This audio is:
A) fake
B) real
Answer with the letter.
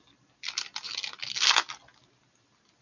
B